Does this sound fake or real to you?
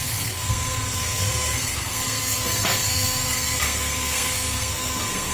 fake